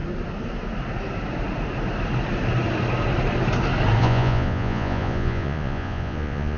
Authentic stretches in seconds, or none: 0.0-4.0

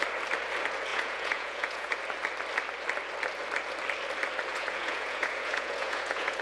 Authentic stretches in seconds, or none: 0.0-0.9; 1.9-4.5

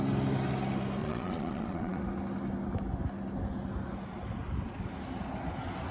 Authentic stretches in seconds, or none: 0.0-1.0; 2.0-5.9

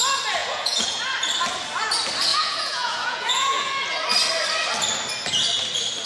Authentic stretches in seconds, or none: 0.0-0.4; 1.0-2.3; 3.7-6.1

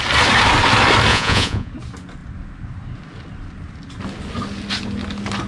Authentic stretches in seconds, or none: 0.0-1.1; 1.7-5.5

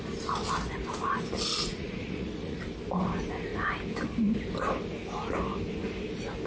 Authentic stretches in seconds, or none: 0.0-1.5; 2.6-6.5

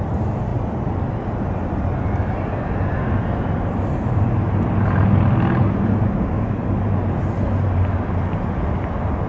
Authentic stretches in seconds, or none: 0.0-9.3

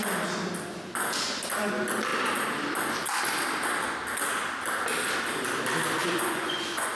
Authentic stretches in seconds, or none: 0.0-6.0